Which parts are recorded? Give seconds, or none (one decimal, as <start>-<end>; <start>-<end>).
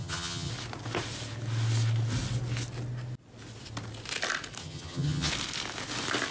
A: 0.5-4.6; 5.3-6.3